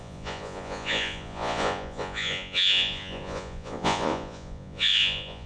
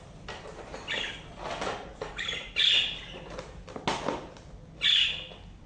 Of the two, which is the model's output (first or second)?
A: first